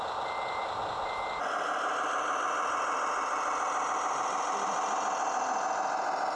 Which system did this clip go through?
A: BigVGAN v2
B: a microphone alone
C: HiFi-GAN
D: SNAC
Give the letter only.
B